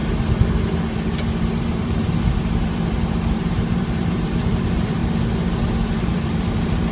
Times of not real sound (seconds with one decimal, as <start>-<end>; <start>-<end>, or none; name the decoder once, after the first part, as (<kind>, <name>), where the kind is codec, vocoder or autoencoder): 0.9-5.0 (vocoder, BigVGAN v2); 5.7-6.9

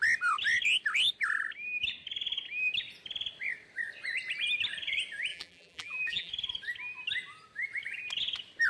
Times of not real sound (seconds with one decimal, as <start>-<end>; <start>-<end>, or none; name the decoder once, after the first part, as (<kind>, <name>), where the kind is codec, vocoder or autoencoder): 5.3-6.3 (vocoder, BigVGAN v2)